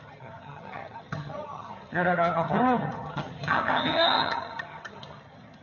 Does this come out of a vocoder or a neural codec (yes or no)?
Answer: yes